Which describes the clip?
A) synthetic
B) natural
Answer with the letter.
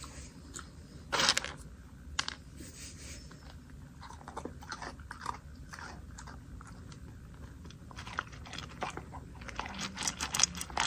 B